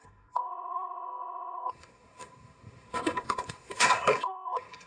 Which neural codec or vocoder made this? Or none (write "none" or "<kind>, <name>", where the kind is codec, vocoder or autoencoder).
codec, SNAC